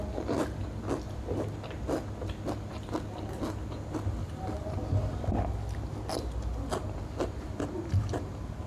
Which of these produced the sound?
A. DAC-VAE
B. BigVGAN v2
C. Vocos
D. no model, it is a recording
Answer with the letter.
D